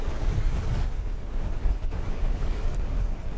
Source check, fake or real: fake